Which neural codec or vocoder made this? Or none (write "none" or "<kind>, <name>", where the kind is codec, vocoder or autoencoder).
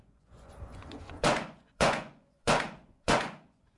vocoder, Vocos